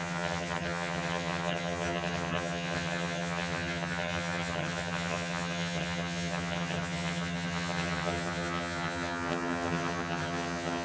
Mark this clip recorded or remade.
remade